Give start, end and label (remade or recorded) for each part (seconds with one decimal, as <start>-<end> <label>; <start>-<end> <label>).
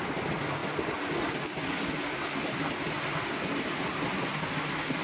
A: 0.0-5.0 recorded